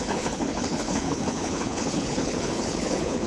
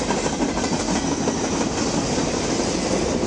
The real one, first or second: second